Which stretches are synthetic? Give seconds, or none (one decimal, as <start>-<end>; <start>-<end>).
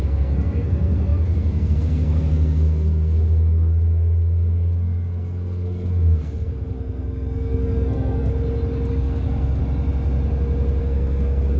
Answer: 0.0-8.3; 8.9-9.6; 10.8-11.6